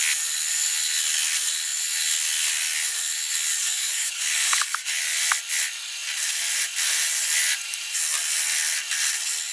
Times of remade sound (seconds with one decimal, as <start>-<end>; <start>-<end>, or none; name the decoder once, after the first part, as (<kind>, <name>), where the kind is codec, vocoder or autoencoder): 3.6-5.0 (codec, DAC)